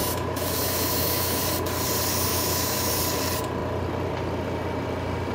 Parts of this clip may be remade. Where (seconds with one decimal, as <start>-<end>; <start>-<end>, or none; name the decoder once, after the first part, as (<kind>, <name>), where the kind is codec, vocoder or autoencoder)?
0.0-1.4 (autoencoder, DAC-VAE); 2.3-2.9